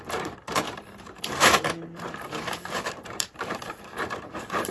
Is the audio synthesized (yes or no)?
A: yes